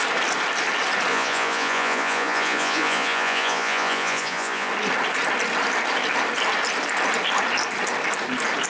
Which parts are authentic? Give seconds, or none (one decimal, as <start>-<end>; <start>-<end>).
0.0-1.1; 4.7-8.7